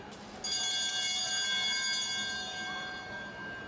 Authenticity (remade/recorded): recorded